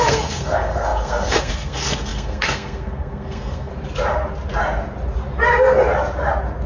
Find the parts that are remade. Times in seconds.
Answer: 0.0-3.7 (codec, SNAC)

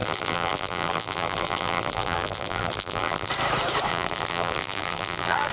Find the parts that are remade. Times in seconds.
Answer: 0.0-3.3 (vocoder, BigVGAN v2); 3.9-5.5